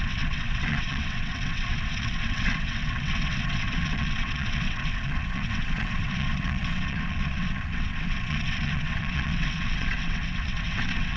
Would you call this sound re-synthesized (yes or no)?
yes